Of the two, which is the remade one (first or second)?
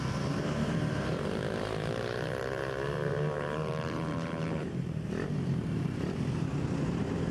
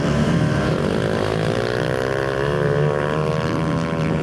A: first